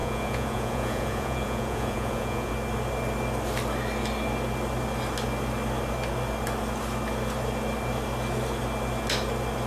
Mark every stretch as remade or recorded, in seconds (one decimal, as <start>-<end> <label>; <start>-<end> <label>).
0.0-2.5 remade; 2.5-9.7 recorded